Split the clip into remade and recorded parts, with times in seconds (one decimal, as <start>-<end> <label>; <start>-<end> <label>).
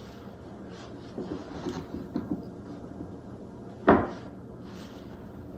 0.0-5.6 recorded